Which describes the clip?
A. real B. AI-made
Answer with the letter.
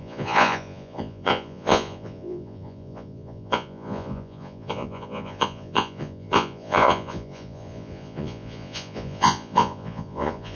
B